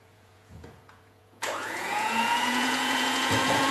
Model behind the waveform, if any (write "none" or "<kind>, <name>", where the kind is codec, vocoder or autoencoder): vocoder, Vocos